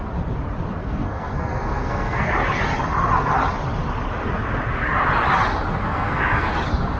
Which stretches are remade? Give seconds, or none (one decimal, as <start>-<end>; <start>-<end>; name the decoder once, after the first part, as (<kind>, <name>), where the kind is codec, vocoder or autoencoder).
0.8-2.3 (codec, SNAC); 5.8-6.5